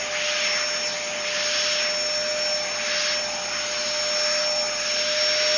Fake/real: real